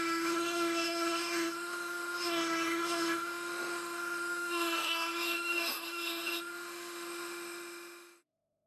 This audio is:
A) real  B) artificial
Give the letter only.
B